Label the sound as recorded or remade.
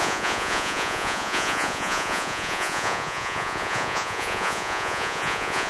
remade